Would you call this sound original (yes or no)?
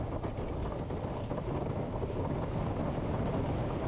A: yes